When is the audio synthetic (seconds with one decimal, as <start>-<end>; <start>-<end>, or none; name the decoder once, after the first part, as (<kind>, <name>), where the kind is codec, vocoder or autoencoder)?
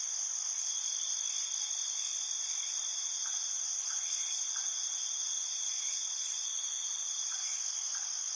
2.9-7.6 (vocoder, Vocos)